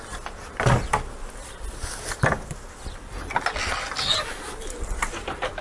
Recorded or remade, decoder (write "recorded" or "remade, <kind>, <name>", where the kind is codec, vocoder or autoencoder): recorded